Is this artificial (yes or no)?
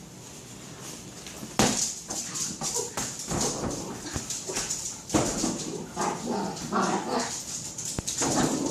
no